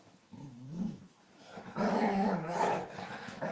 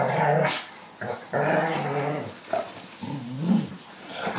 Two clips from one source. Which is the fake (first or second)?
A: first